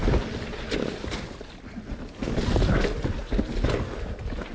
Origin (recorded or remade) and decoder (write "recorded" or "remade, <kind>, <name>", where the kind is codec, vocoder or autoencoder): recorded